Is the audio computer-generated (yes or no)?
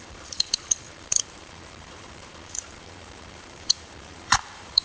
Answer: yes